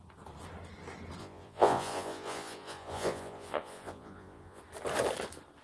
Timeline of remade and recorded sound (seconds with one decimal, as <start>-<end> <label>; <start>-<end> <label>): 0.0-1.2 recorded; 1.2-4.6 remade; 4.6-5.6 recorded